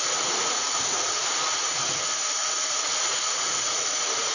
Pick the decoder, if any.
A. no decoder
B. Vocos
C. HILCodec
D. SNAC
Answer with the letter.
B